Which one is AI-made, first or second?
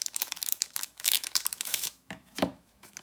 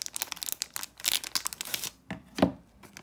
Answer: first